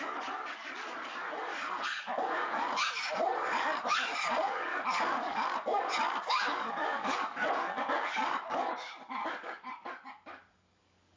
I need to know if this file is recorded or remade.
remade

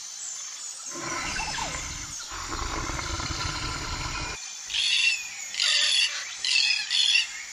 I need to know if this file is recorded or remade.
recorded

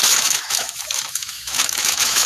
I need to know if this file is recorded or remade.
remade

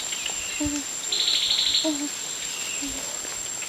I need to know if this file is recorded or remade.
recorded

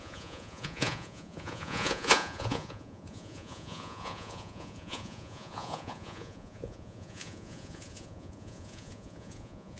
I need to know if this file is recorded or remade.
remade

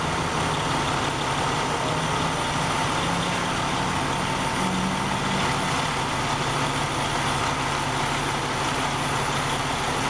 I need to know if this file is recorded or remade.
recorded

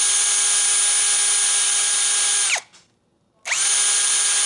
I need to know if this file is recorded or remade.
recorded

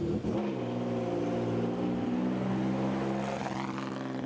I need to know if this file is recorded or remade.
recorded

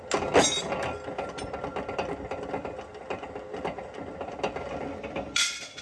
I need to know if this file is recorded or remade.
recorded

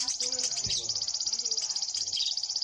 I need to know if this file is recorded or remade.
recorded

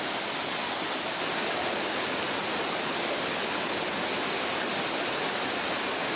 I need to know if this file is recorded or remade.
recorded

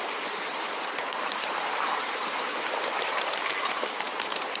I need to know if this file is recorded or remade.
remade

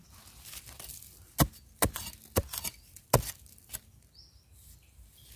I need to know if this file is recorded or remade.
recorded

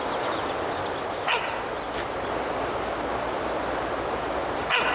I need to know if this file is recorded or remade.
recorded